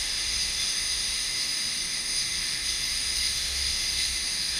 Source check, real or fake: fake